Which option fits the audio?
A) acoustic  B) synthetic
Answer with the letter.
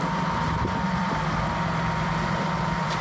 B